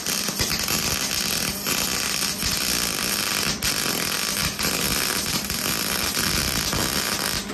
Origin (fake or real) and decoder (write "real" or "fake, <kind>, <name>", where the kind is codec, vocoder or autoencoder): real